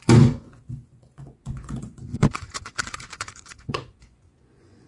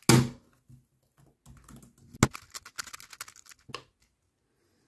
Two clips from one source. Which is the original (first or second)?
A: second